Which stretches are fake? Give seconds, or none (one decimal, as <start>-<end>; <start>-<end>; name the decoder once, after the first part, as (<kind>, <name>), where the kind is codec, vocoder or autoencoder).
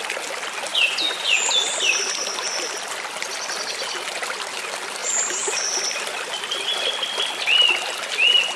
0.7-1.5 (vocoder, Vocos)